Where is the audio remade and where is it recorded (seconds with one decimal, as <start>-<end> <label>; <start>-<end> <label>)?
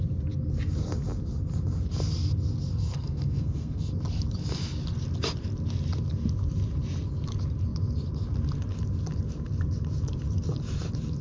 0.0-2.7 recorded; 2.7-3.9 remade; 3.9-11.2 recorded